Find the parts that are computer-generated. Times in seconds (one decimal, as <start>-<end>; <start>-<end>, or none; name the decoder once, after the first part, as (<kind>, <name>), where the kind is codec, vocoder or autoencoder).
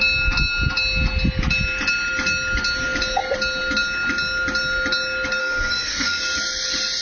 5.4-6.2 (autoencoder, DAC-VAE)